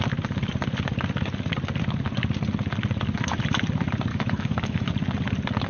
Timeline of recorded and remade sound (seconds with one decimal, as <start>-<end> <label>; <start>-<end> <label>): 0.0-4.1 recorded; 4.1-4.9 remade; 4.9-5.7 recorded

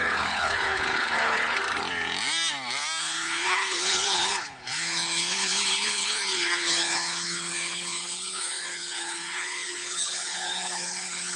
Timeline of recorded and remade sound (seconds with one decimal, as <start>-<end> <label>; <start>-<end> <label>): 0.0-1.6 remade; 1.6-3.0 recorded; 3.0-11.4 remade

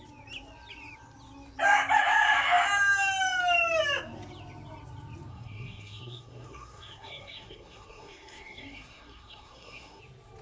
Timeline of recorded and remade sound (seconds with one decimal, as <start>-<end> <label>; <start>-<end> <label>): 0.0-5.3 recorded; 5.3-10.0 remade; 10.0-10.4 recorded

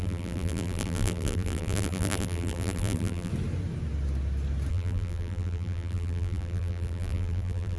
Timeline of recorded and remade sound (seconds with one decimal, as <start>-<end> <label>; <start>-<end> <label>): 0.0-3.3 remade; 3.3-4.7 recorded; 4.7-7.8 remade